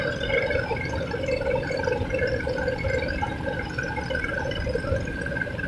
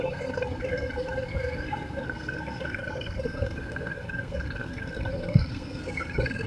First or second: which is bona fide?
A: first